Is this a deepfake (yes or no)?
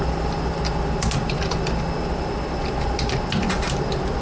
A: no